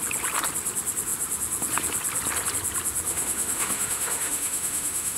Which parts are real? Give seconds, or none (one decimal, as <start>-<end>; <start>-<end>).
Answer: 0.0-3.1